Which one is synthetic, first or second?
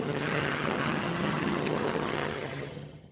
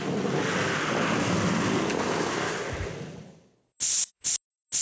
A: first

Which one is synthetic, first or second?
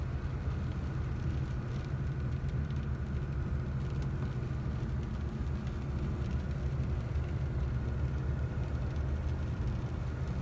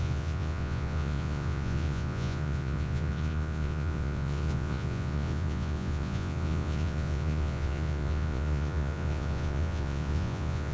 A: second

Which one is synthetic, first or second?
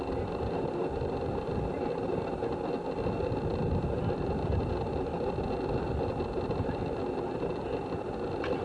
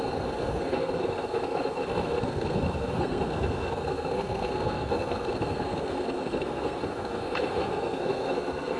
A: second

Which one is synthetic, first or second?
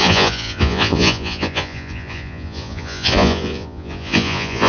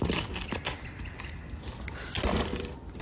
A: first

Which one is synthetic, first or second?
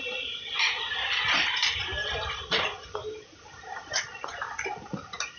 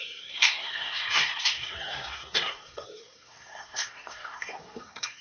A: second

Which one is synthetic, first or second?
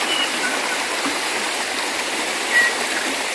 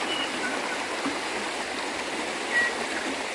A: first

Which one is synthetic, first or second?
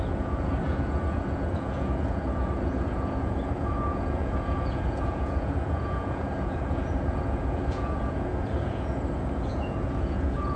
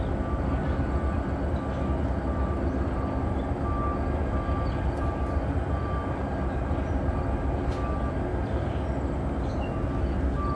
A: first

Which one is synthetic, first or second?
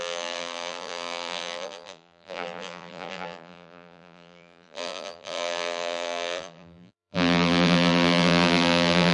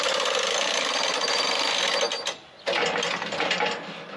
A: first